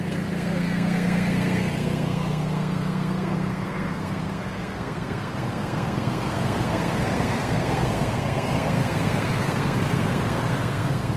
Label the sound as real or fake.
fake